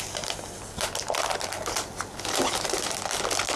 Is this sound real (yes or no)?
yes